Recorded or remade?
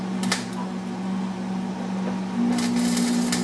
recorded